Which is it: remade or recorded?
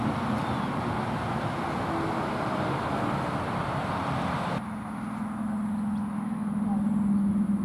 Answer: recorded